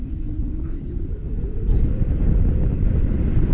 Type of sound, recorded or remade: recorded